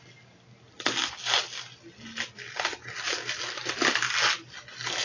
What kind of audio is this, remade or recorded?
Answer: recorded